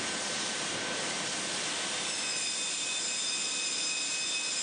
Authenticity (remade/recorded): recorded